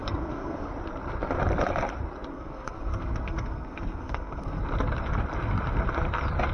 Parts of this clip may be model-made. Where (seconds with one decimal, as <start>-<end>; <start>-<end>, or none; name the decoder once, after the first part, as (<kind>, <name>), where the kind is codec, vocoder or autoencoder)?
0.0-0.7 (codec, SNAC); 2.3-4.6